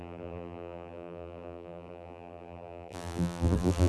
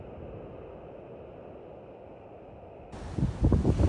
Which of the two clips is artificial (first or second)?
first